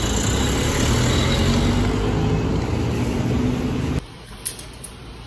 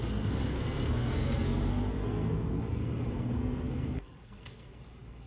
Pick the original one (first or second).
first